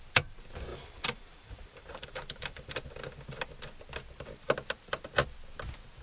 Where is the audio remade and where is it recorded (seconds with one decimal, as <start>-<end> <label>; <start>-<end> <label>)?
0.0-0.7 recorded; 0.7-2.8 remade; 2.8-6.0 recorded